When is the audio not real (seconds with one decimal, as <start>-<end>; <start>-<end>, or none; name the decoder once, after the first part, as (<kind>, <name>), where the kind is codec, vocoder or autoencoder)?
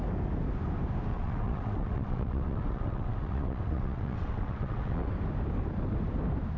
1.1-5.1 (vocoder, WaveNeXt)